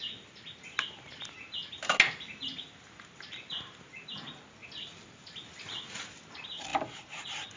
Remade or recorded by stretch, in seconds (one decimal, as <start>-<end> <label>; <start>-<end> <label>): 0.0-7.6 recorded